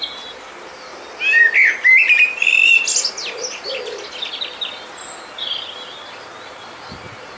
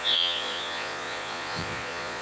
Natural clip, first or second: first